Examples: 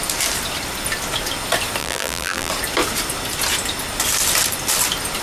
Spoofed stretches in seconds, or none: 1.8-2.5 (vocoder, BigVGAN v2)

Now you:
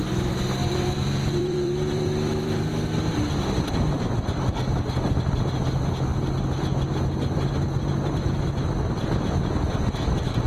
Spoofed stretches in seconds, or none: 0.6-2.7 (vocoder, BigVGAN v2)